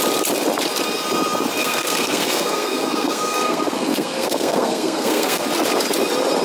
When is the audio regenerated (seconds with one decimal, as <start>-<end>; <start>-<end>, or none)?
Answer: 1.6-5.4